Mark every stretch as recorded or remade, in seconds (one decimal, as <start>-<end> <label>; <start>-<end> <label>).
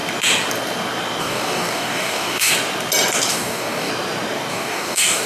0.0-1.2 recorded; 1.2-2.5 remade; 2.5-3.3 recorded; 3.3-3.9 remade; 3.9-4.5 recorded; 4.5-5.3 remade